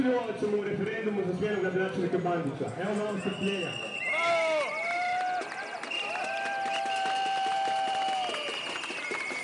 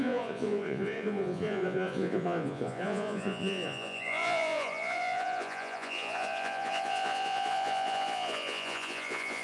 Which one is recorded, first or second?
first